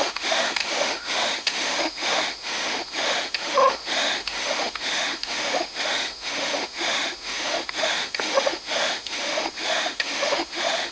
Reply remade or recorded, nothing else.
remade